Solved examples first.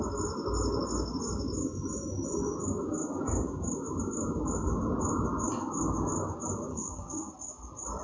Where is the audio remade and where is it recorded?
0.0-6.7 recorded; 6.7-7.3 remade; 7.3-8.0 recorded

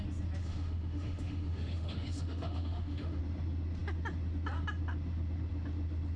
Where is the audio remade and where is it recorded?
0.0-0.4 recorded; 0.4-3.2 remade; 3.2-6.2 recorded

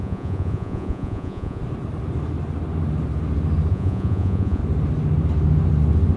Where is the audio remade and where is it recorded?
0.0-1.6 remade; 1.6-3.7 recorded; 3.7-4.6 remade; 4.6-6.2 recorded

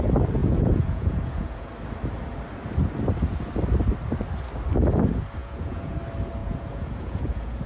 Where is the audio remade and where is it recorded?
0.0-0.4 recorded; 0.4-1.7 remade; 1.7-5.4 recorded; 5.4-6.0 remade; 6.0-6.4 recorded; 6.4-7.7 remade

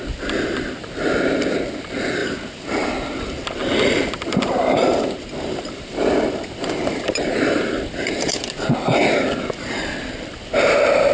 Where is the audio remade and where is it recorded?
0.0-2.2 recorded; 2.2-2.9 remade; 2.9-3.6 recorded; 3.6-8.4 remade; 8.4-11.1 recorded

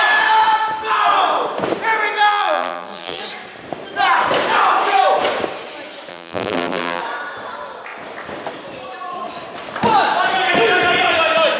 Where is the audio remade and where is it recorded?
0.0-2.3 recorded; 2.3-3.2 remade; 3.2-6.1 recorded; 6.1-7.0 remade; 7.0-11.6 recorded

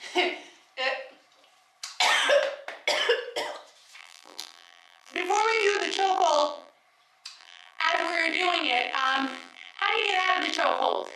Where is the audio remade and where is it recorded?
0.0-4.0 recorded; 4.0-6.7 remade; 6.7-7.4 recorded; 7.4-11.2 remade

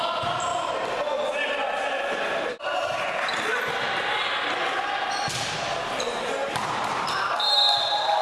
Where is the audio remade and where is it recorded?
0.0-6.4 recorded; 6.4-7.5 remade; 7.5-8.2 recorded